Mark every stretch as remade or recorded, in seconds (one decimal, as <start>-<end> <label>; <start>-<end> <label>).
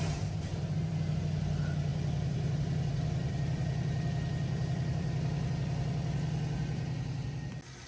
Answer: 0.0-0.5 recorded; 0.5-1.2 remade; 1.2-1.9 recorded; 1.9-5.5 remade; 5.5-7.9 recorded